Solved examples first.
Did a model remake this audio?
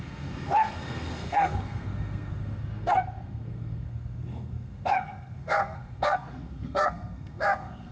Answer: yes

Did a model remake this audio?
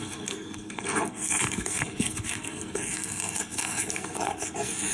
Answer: yes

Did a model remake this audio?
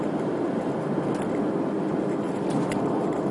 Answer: no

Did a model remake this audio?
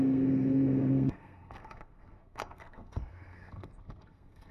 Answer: yes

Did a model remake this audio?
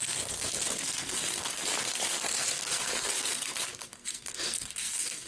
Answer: yes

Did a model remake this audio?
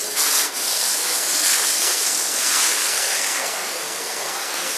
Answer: yes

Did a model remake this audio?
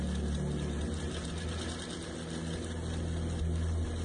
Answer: no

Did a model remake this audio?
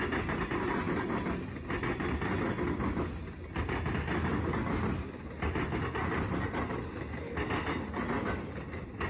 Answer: no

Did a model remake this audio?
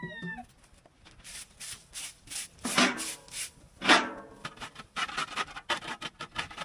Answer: no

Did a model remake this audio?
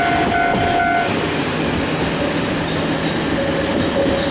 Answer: no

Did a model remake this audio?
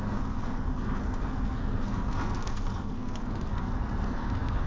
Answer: yes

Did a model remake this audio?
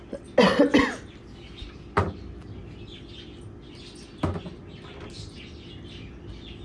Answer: no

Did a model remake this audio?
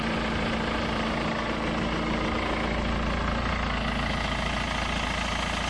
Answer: no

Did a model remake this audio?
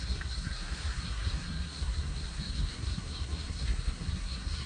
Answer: yes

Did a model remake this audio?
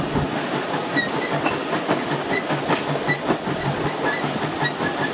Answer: no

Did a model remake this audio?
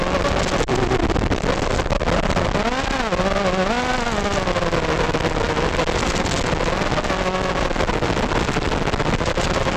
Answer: no